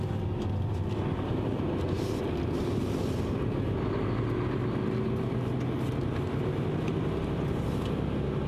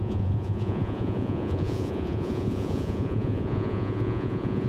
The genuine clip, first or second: first